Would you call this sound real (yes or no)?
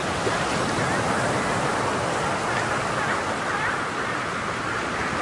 yes